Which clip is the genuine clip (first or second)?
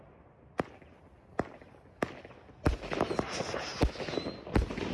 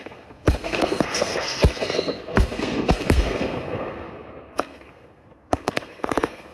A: first